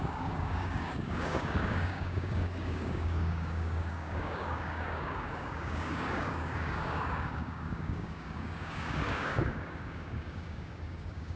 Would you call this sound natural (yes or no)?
no